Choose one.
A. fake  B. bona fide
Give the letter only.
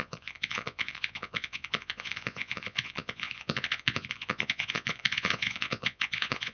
A